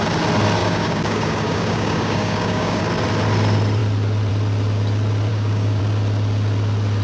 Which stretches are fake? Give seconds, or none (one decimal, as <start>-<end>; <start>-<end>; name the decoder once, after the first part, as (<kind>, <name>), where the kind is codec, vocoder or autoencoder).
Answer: 0.6-2.8 (codec, DAC); 5.3-5.8